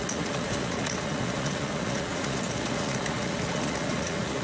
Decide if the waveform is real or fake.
fake